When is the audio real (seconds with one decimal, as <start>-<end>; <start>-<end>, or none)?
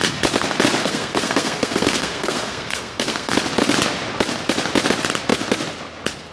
0.0-0.8; 3.3-6.3